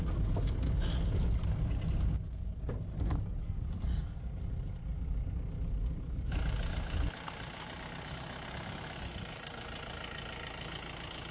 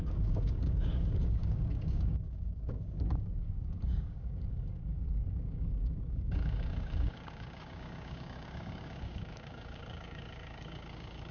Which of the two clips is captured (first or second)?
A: first